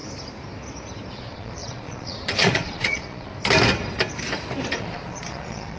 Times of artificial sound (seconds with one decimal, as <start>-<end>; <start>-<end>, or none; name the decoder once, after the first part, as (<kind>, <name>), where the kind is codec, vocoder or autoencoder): 1.1-3.3 (vocoder, Vocos); 4.8-5.8